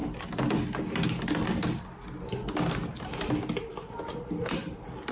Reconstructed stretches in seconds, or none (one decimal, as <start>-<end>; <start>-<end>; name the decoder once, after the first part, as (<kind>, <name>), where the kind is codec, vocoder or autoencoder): none